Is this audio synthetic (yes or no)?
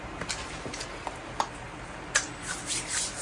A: no